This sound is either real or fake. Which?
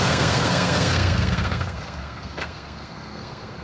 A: fake